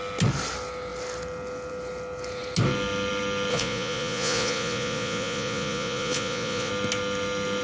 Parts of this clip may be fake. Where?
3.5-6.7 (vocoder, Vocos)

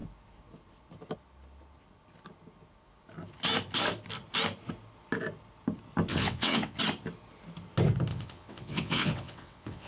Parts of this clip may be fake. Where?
6.1-6.8 (vocoder, WaveNeXt); 8.1-9.9